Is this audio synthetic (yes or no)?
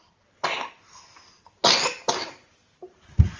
no